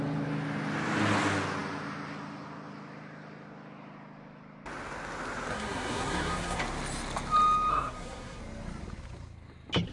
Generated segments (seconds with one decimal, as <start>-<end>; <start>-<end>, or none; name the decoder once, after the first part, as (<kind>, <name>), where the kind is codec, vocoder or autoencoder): 5.5-6.6 (codec, SNAC); 7.7-8.4

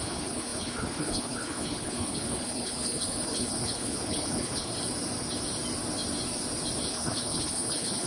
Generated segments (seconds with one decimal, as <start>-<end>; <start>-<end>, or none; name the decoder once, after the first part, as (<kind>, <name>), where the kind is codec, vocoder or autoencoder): 0.0-4.7 (codec, HILCodec); 6.9-8.1